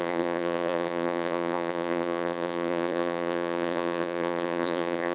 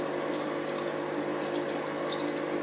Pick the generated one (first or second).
first